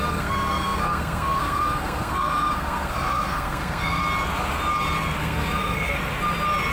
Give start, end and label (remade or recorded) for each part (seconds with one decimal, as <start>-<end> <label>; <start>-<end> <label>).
0.0-4.0 remade; 4.0-5.2 recorded; 5.2-6.0 remade; 6.0-6.7 recorded